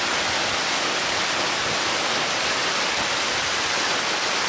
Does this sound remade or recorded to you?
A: recorded